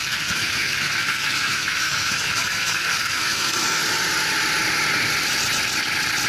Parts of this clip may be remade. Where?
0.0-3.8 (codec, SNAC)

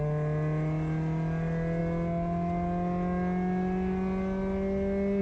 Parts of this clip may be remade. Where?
none

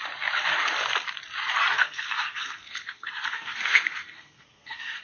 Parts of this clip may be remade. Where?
1.8-5.0 (codec, SNAC)

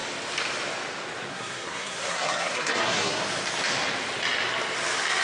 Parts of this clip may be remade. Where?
1.3-3.2 (codec, SNAC)

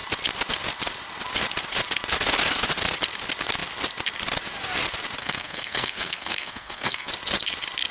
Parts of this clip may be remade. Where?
5.2-7.1 (codec, SNAC)

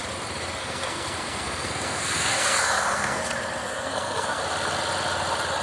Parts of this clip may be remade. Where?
0.6-3.2 (codec, SNAC); 3.6-4.4